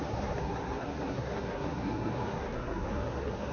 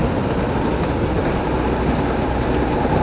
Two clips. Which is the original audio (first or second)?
second